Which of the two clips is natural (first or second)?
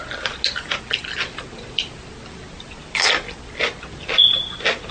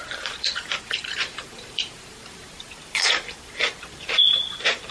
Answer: first